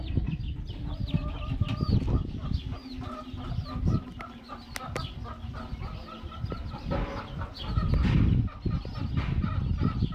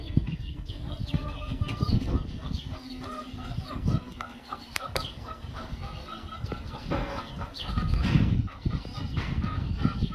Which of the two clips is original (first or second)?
first